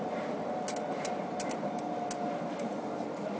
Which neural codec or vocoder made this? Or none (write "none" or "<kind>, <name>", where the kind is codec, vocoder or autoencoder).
none